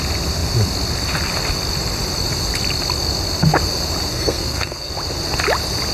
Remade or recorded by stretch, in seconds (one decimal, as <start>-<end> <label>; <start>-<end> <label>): 0.0-4.1 recorded; 4.1-4.9 remade; 4.9-5.9 recorded